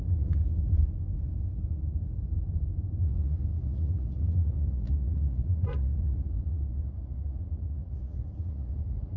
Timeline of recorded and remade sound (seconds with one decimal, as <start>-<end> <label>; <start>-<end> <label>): 0.0-0.4 remade; 0.4-3.0 recorded; 3.0-9.2 remade